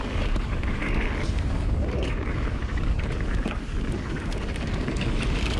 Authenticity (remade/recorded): remade